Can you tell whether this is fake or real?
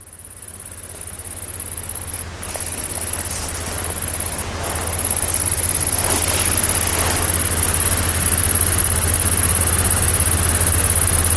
real